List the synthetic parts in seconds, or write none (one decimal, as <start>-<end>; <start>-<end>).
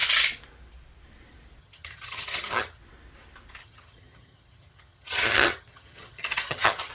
1.6-2.8; 3.6-6.9